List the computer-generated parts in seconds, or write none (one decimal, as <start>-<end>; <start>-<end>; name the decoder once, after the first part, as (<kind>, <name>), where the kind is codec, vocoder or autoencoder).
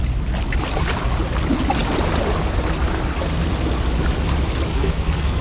4.7-5.4 (codec, SNAC)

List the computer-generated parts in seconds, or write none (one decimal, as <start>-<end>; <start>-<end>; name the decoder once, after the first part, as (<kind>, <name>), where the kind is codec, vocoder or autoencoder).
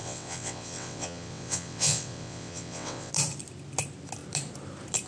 0.0-3.1 (vocoder, WaveNeXt)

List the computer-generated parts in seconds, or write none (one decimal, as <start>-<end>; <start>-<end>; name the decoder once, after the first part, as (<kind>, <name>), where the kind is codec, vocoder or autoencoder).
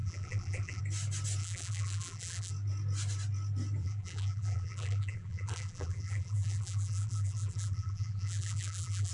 0.0-0.8 (vocoder, BigVGAN v2); 1.4-2.5; 3.8-9.1